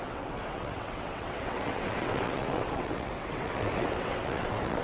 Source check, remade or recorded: remade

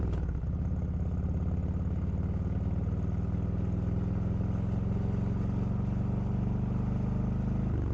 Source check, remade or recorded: recorded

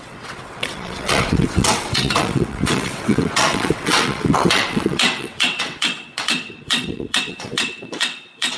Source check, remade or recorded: remade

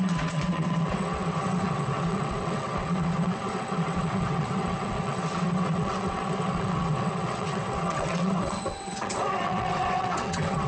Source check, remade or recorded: remade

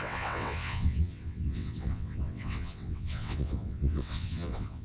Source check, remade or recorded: remade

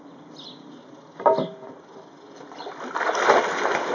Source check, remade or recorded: recorded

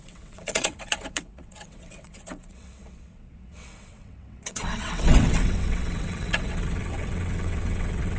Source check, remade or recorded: remade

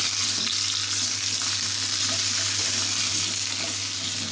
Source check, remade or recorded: recorded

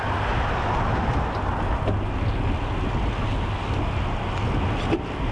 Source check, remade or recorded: recorded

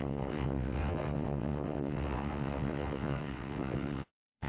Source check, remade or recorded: remade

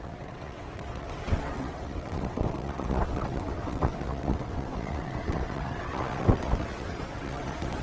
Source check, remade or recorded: remade